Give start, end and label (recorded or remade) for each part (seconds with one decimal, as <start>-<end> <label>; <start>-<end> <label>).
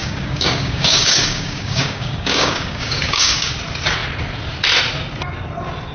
0.0-3.5 remade; 3.5-5.9 recorded